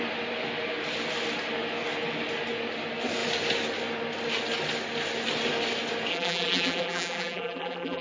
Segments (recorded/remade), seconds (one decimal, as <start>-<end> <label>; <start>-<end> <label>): 0.0-6.1 recorded; 6.1-8.0 remade